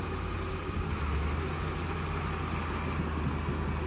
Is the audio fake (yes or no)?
no